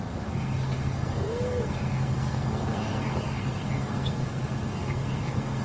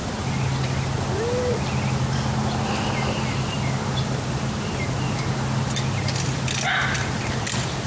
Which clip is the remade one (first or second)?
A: first